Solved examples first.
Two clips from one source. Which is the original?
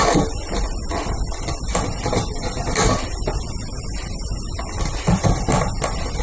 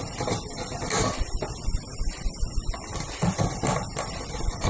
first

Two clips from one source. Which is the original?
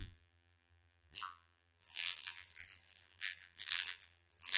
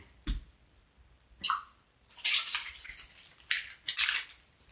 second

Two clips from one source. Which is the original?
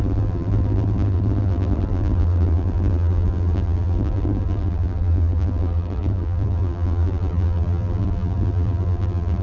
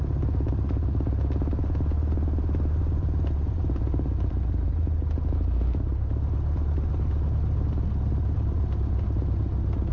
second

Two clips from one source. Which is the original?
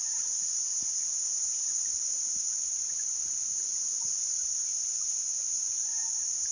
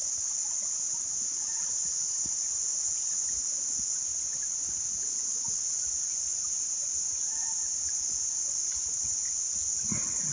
second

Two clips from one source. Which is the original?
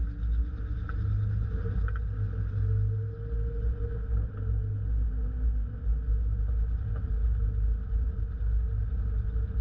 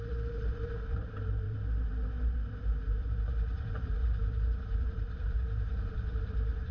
first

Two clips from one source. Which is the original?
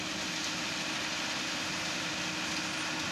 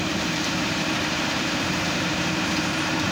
first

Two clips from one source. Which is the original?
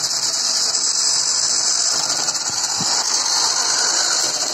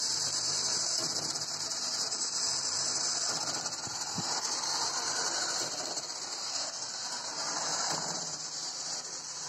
first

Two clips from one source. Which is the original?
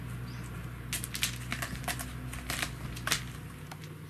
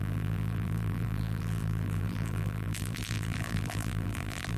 first